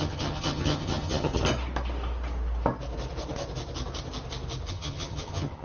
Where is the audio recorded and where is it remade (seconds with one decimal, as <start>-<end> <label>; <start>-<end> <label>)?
0.0-1.3 remade; 1.3-4.7 recorded; 4.7-5.6 remade